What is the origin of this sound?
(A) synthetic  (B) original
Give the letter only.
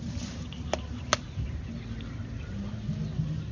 B